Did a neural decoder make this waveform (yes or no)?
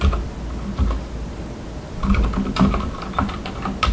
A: no